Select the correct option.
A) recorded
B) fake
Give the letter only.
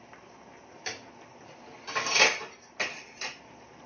A